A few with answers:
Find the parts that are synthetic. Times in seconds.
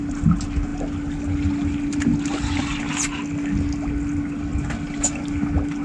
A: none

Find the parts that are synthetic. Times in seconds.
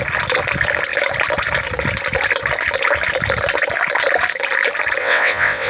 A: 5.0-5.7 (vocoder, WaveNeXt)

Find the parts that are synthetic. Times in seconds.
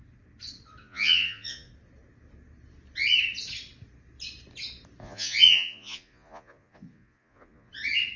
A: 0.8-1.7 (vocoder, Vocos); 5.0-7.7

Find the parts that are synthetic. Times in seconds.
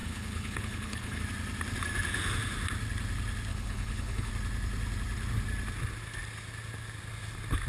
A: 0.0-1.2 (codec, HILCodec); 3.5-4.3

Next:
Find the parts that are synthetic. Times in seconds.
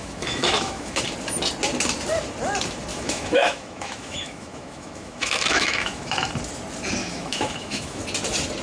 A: 0.0-1.0 (autoencoder, DAC-VAE); 2.9-6.3; 7.0-8.0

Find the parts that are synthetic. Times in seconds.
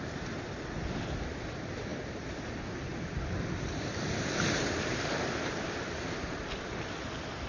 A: 1.9-2.5 (vocoder, BigVGAN v2); 2.9-6.4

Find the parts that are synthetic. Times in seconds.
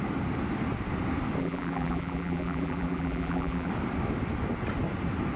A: 1.4-3.7 (vocoder, BigVGAN v2)